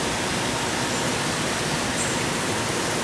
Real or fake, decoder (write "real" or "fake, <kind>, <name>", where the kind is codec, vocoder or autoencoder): real